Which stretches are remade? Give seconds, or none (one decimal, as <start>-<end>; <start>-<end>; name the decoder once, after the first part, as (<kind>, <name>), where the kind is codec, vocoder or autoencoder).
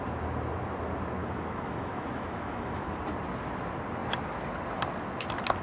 1.2-2.9 (autoencoder, DAC-VAE)